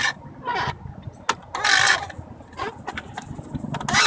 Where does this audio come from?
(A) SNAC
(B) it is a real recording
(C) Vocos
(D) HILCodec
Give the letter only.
B